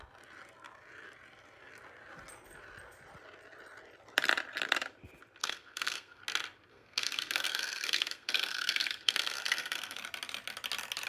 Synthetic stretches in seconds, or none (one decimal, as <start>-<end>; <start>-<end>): 5.4-6.2; 6.7-10.0

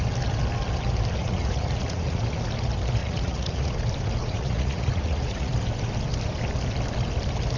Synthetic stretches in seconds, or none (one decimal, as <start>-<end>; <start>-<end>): 1.2-2.2; 3.0-3.7; 4.2-5.5

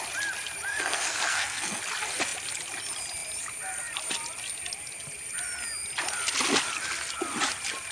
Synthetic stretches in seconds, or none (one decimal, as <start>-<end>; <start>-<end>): 0.7-1.8

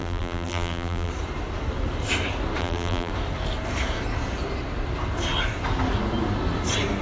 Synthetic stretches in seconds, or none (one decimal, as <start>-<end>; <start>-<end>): 0.0-1.1; 2.6-3.1

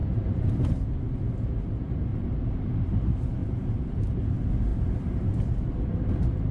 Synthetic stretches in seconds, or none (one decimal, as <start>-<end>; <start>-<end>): 0.0-0.7; 2.1-2.7; 3.4-4.2

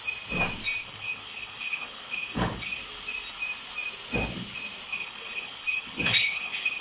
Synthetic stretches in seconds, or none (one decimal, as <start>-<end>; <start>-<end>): 0.8-2.8; 4.9-6.8

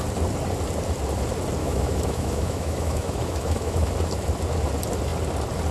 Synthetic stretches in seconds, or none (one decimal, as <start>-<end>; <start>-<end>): 1.6-3.9

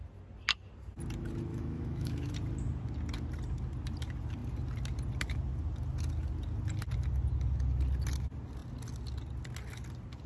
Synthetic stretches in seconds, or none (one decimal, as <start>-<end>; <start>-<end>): 1.5-2.3